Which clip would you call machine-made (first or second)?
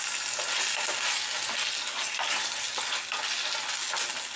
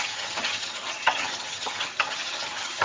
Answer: second